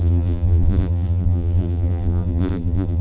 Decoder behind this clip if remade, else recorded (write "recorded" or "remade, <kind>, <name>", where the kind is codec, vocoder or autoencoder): remade, vocoder, BigVGAN v2